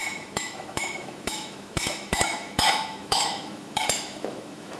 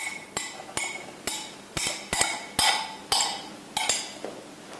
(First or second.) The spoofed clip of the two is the first